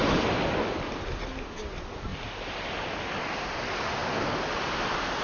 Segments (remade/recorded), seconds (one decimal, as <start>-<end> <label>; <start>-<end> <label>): 0.0-5.2 recorded